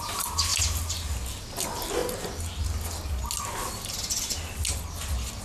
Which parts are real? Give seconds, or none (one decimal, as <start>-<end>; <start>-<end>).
0.0-5.4